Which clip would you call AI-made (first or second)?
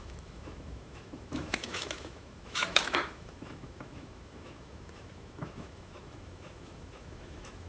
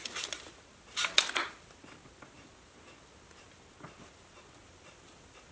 first